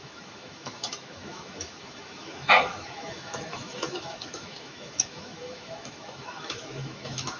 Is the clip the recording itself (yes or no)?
no